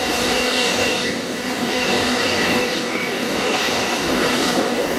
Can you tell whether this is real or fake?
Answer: fake